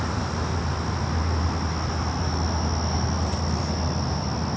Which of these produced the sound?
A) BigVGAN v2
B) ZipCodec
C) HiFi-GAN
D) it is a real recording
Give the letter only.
D